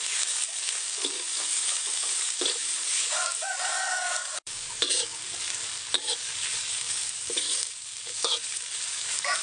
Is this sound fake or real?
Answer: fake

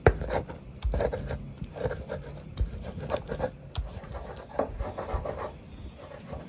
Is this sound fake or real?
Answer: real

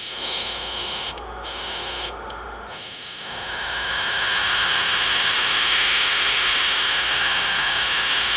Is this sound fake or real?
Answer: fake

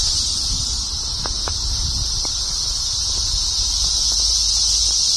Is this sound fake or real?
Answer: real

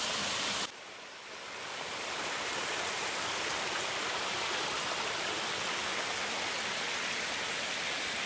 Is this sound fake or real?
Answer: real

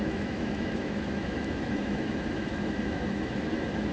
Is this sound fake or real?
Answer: fake